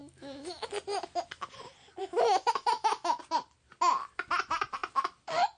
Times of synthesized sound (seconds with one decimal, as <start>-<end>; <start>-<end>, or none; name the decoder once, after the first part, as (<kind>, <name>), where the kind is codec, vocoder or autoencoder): 0.0-0.7 (autoencoder, DAC-VAE); 2.0-3.2